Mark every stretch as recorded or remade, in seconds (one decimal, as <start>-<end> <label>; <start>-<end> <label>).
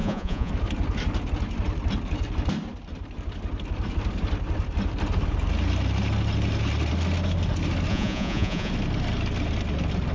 0.0-0.5 remade; 0.5-7.9 recorded; 7.9-8.7 remade; 8.7-10.1 recorded